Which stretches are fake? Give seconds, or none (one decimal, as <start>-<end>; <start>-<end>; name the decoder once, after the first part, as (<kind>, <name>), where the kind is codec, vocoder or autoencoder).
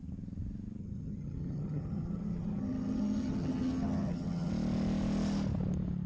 0.8-4.5 (vocoder, HiFi-GAN)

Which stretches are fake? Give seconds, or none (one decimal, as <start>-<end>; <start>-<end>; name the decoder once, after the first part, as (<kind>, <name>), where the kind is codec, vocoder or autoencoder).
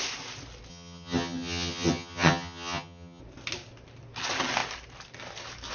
0.7-3.2 (vocoder, HiFi-GAN)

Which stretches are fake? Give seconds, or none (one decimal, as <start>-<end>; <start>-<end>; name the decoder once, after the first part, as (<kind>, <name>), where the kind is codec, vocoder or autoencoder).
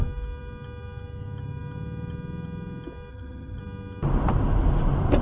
3.1-3.6 (vocoder, HiFi-GAN)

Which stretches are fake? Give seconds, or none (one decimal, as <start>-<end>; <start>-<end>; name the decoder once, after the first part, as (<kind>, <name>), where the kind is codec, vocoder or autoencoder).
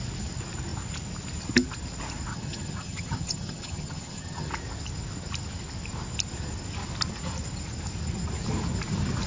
2.3-4.5 (vocoder, HiFi-GAN)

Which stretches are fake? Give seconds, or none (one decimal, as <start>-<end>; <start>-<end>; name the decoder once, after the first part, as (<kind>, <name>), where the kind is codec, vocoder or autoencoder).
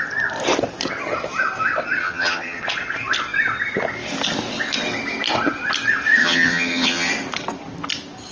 2.0-2.6 (vocoder, HiFi-GAN); 6.2-7.1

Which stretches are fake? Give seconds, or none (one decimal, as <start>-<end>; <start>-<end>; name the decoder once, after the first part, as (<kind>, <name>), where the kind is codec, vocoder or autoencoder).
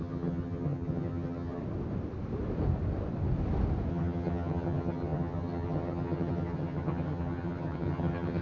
0.0-1.6 (vocoder, HiFi-GAN); 3.9-8.4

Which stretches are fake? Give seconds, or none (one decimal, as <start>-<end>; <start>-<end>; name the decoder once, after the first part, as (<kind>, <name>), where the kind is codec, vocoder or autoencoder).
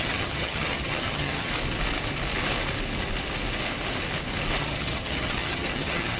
0.0-1.5 (vocoder, HiFi-GAN); 4.6-6.2